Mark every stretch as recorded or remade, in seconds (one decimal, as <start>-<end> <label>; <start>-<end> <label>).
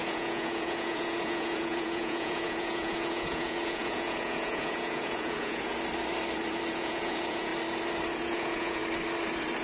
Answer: 0.0-5.7 remade; 5.7-6.7 recorded; 6.7-7.5 remade; 7.5-8.2 recorded; 8.2-8.8 remade; 8.8-9.6 recorded